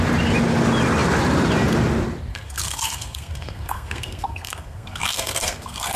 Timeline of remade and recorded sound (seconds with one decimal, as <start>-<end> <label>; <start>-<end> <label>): 0.0-2.3 recorded; 2.3-6.0 remade